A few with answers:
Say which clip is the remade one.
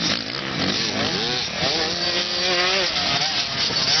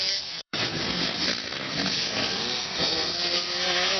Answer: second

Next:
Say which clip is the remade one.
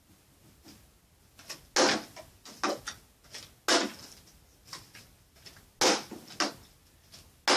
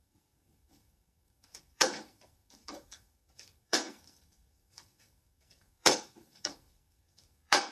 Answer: second